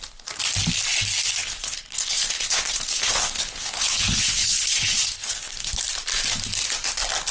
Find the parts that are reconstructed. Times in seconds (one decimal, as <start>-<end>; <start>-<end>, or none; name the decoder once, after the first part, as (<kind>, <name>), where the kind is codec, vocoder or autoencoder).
1.4-5.7 (codec, HILCodec)

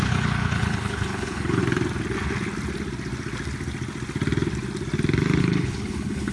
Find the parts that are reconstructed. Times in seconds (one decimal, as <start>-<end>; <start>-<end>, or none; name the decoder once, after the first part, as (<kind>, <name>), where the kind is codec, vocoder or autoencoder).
0.0-1.6 (codec, HILCodec); 5.4-6.3